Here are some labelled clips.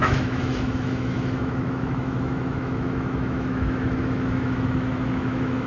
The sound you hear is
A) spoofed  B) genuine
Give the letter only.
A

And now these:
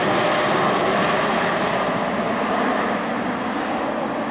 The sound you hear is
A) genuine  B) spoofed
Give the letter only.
A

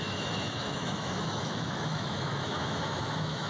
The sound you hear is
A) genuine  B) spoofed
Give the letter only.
B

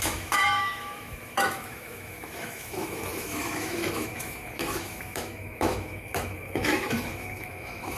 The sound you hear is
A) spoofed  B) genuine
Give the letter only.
A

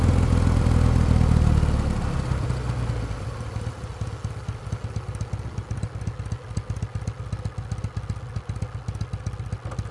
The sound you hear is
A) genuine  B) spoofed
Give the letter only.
A